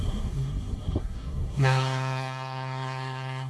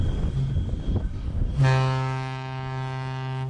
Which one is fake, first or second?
first